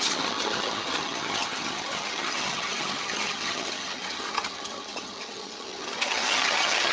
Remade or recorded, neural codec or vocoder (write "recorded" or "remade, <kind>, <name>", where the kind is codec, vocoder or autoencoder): remade, vocoder, HiFi-GAN